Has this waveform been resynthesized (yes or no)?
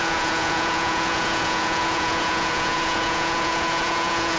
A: yes